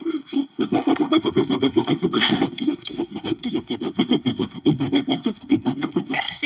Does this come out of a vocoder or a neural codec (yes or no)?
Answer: yes